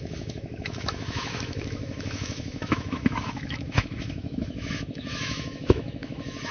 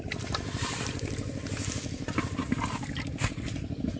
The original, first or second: second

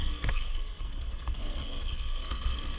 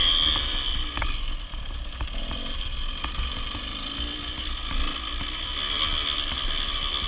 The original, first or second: second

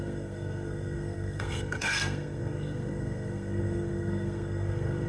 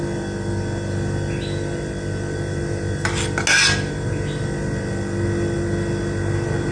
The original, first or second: second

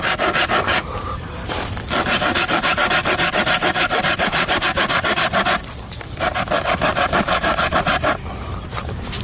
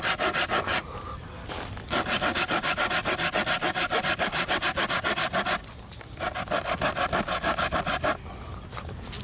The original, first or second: second